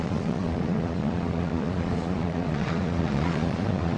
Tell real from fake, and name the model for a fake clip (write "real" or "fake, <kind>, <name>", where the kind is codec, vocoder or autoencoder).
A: fake, vocoder, Vocos